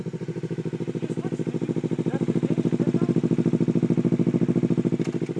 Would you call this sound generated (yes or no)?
no